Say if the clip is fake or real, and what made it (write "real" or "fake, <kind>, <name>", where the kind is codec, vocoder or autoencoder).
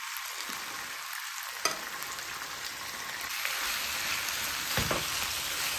real